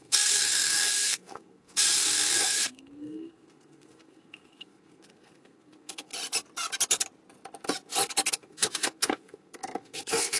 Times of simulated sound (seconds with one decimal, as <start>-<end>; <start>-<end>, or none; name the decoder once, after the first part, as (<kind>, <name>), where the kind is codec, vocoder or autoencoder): 0.0-6.1 (codec, SNAC); 8.3-10.4